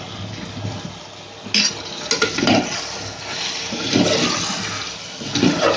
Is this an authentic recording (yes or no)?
yes